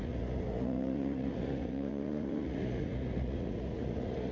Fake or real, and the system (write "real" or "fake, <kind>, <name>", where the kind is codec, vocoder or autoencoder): fake, vocoder, Vocos